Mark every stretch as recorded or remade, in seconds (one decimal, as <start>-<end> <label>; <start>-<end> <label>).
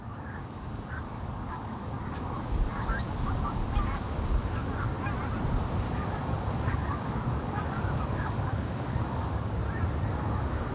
0.0-4.9 remade; 4.9-5.8 recorded; 5.8-9.6 remade; 9.6-10.1 recorded; 10.1-10.7 remade